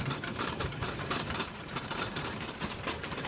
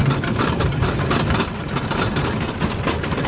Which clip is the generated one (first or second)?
first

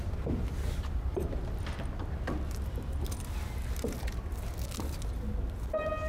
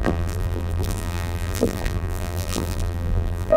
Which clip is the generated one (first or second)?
second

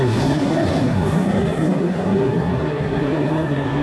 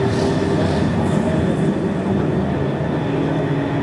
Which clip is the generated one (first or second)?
first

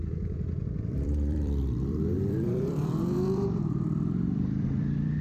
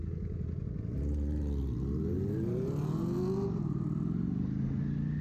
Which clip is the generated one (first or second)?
first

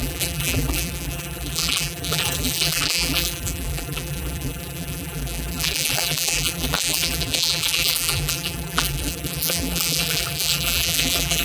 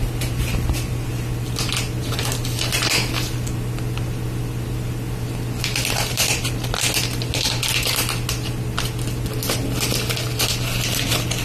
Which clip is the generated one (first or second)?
first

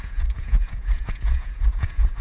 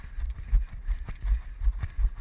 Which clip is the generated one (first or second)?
first